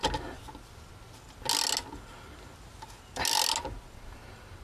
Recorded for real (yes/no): yes